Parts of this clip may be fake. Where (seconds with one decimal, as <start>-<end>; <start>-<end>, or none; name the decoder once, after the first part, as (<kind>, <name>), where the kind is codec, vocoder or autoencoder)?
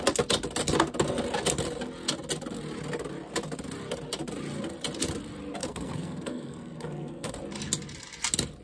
5.6-7.3 (codec, SNAC)